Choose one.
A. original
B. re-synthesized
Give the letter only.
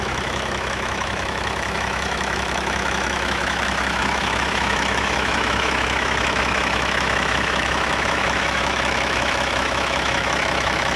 B